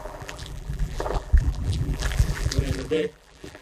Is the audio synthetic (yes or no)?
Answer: yes